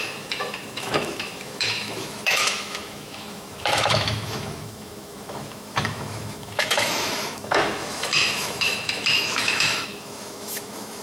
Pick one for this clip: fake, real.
fake